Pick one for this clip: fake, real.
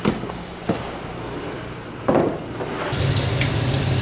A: real